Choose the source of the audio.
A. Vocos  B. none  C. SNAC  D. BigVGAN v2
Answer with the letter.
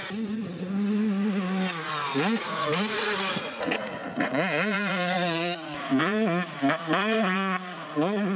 A